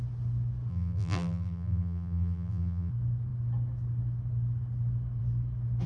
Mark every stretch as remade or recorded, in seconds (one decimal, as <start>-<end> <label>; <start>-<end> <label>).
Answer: 0.0-0.7 recorded; 0.7-2.9 remade; 2.9-5.9 recorded